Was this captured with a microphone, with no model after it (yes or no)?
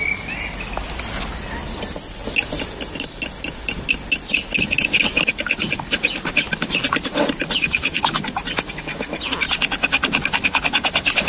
yes